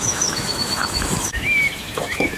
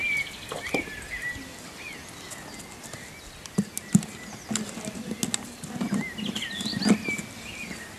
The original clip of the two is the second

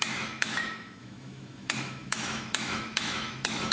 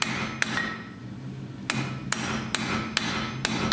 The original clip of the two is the second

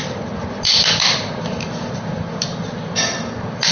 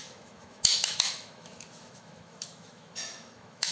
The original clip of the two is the first